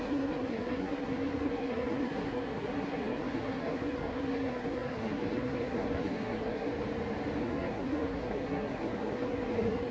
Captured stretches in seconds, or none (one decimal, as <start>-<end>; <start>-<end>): 6.7-7.4